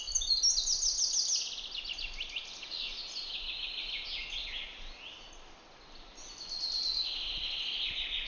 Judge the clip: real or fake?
real